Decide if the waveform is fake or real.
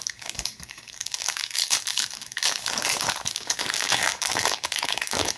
fake